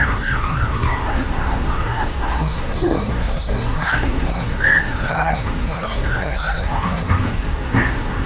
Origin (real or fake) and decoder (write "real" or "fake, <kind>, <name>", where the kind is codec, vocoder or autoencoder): fake, codec, SNAC